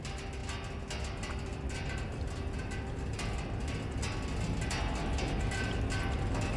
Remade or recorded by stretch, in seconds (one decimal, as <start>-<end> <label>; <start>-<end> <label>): 0.0-6.6 recorded